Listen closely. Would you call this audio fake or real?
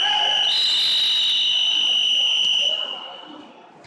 real